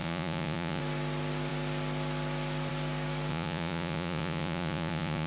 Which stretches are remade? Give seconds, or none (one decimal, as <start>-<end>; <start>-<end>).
0.0-0.8; 3.3-5.3